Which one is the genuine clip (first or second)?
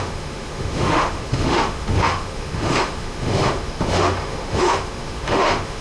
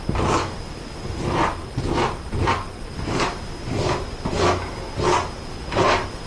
second